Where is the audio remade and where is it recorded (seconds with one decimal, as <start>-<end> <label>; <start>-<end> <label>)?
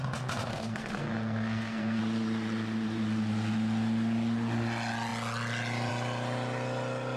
0.0-0.5 recorded; 0.5-2.0 remade; 2.0-7.2 recorded